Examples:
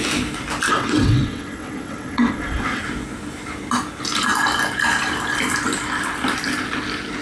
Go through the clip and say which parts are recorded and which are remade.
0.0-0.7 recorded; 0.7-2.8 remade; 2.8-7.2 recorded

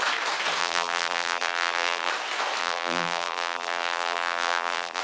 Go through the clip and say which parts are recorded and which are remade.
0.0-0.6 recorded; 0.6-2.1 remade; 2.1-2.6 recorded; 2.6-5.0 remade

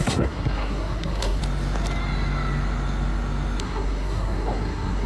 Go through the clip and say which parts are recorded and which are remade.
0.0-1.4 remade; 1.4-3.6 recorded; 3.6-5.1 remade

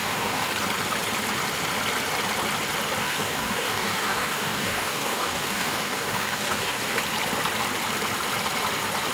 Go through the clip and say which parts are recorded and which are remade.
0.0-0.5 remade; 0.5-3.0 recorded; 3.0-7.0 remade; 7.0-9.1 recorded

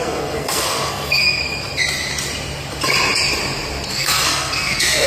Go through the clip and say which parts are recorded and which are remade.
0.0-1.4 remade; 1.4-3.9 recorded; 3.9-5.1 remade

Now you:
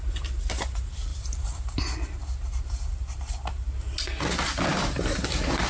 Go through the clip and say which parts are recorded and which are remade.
0.0-1.1 recorded; 1.1-1.8 remade; 1.8-4.7 recorded; 4.7-5.3 remade; 5.3-5.7 recorded

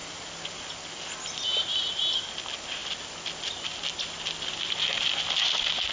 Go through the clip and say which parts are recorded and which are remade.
0.0-5.9 recorded